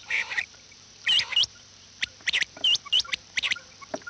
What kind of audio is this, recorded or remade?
remade